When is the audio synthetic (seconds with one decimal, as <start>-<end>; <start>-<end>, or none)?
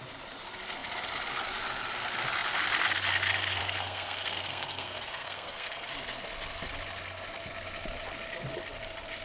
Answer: 3.6-5.9